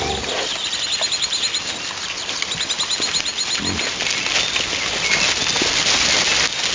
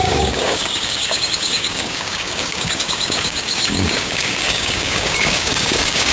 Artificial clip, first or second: second